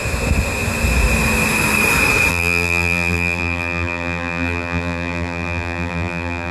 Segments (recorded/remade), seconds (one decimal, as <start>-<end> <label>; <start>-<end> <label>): 0.0-2.3 recorded; 2.3-6.5 remade

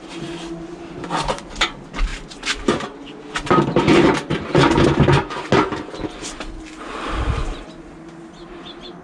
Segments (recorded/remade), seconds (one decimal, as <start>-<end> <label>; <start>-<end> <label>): 0.0-9.0 recorded

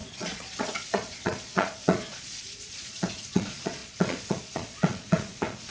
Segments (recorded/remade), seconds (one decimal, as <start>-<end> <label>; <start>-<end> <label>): 0.0-5.7 remade

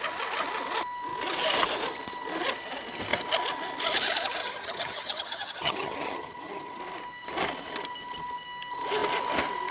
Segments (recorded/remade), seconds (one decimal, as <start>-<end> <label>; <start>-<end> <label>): 0.0-4.4 recorded; 4.4-6.8 remade; 6.8-9.7 recorded